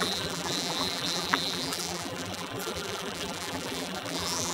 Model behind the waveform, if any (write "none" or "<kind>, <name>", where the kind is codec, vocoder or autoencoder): vocoder, BigVGAN v2